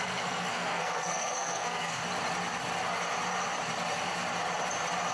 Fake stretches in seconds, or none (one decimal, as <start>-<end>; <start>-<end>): 0.0-2.0